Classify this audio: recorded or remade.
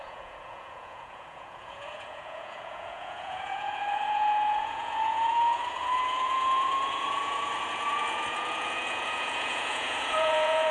remade